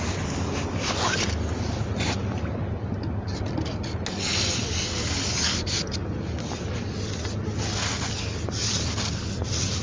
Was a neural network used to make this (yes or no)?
no